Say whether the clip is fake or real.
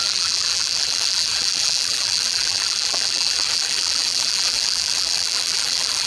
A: fake